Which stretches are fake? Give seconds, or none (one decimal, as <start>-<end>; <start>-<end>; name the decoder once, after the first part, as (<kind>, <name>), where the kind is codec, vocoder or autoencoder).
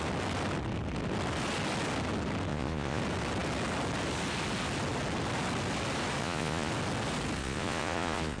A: 2.5-3.0 (vocoder, Vocos); 6.2-6.7; 7.4-8.4